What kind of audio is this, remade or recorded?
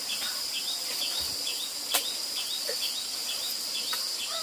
recorded